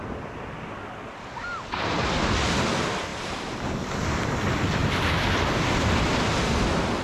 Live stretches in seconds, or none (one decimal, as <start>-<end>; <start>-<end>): 0.0-7.0